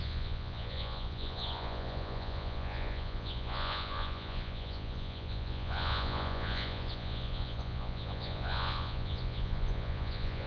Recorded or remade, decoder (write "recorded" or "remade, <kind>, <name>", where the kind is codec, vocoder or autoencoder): remade, vocoder, Vocos